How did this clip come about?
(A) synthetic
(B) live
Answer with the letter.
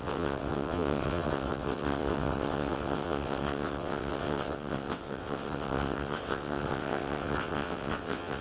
A